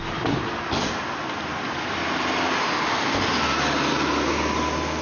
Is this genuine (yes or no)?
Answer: yes